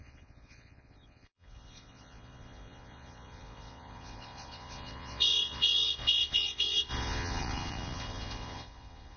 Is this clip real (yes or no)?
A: no